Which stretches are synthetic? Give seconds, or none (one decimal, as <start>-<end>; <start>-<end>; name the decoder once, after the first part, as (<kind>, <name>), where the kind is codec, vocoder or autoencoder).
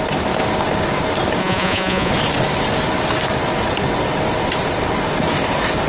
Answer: 1.4-2.1 (vocoder, Vocos)